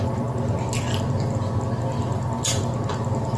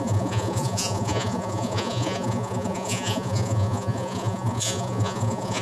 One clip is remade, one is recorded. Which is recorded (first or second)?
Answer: first